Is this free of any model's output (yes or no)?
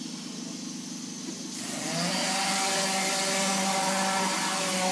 yes